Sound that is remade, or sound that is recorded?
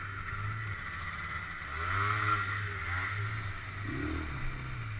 recorded